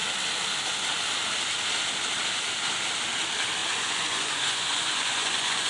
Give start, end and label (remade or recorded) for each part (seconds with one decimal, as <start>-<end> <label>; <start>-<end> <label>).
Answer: 0.0-3.6 recorded; 3.6-5.7 remade